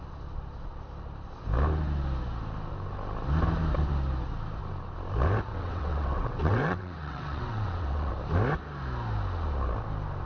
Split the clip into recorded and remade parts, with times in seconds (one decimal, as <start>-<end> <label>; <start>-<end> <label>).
0.0-5.5 recorded; 5.5-8.1 remade; 8.1-10.3 recorded